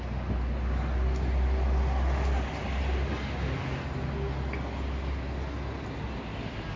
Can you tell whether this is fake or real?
real